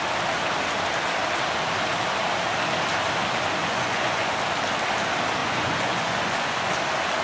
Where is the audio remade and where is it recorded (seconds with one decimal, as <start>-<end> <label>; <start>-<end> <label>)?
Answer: 0.0-3.6 recorded; 3.6-4.3 remade; 4.3-5.4 recorded; 5.4-6.7 remade; 6.7-7.2 recorded